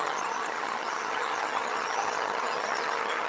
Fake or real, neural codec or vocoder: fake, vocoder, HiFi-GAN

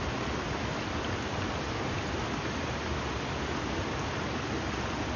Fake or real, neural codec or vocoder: real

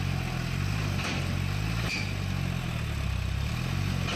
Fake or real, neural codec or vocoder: real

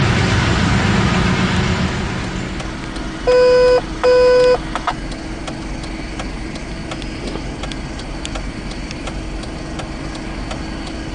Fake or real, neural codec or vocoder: real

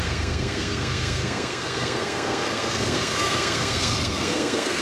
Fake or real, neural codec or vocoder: fake, codec, SNAC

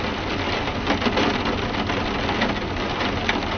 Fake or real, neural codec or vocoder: real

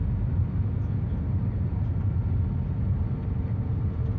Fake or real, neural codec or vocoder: real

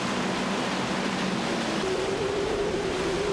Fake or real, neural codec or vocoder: real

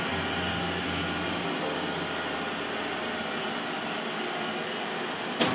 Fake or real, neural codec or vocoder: real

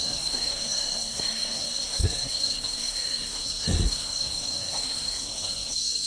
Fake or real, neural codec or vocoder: fake, codec, SNAC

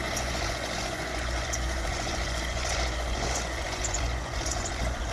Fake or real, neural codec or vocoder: fake, vocoder, Vocos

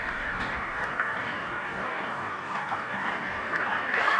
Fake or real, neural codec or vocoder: fake, codec, DAC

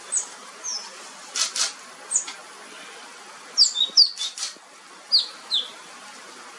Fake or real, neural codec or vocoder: real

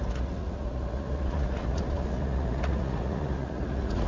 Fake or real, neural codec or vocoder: fake, vocoder, Vocos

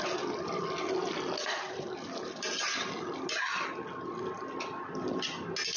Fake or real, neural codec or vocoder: real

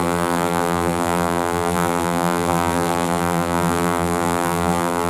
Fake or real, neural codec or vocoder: fake, vocoder, BigVGAN v2